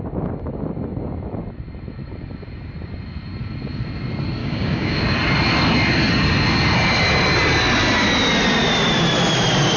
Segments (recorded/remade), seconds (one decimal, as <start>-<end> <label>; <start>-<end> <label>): 0.0-4.4 recorded; 4.4-5.0 remade; 5.0-9.8 recorded